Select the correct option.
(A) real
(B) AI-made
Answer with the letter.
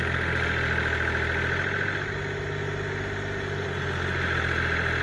A